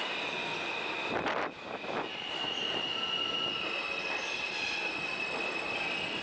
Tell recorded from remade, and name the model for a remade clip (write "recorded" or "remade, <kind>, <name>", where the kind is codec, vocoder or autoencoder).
recorded